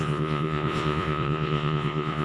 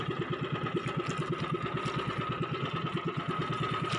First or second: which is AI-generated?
first